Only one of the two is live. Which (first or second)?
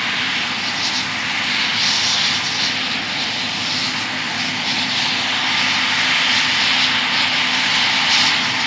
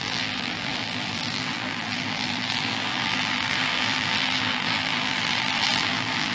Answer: first